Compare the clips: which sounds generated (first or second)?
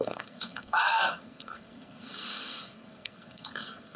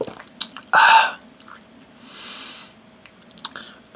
first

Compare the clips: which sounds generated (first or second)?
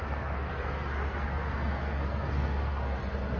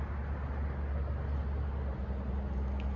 first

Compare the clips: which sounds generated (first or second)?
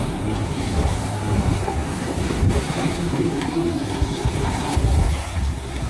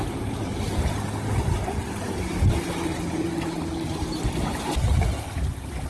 first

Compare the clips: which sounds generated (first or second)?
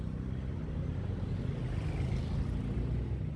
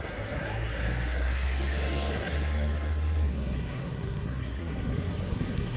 second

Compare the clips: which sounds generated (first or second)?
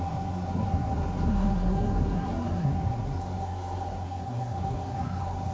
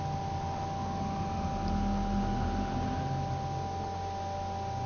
first